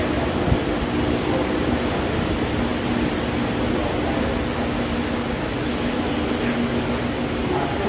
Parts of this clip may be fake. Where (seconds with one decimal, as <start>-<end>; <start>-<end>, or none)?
none